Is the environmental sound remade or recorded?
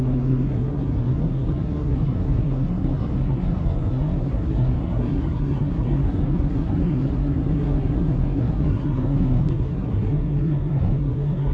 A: remade